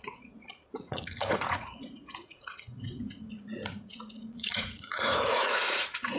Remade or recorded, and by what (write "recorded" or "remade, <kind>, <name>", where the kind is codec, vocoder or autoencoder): remade, vocoder, Vocos